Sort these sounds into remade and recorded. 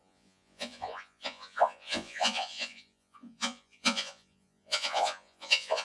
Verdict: remade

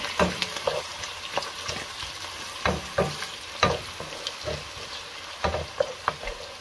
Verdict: recorded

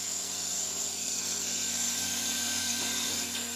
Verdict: remade